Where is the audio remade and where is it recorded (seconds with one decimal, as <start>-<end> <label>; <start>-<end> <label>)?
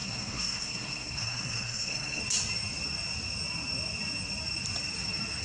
0.0-2.2 remade; 2.2-5.4 recorded